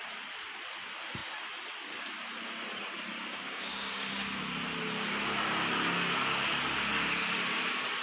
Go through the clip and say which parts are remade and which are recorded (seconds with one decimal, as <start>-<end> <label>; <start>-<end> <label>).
0.0-3.3 recorded; 3.3-4.4 remade; 4.4-8.0 recorded